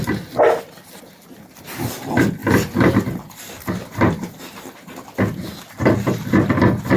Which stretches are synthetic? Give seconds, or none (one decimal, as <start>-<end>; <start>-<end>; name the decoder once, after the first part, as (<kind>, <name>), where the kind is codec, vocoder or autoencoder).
none